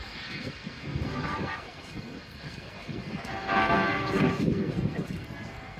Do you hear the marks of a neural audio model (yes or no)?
yes